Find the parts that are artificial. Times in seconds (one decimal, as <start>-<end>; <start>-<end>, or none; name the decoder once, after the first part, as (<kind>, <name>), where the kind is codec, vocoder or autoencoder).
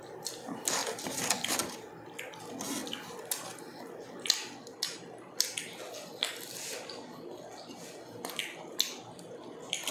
none